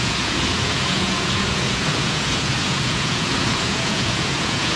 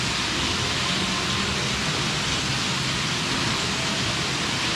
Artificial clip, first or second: first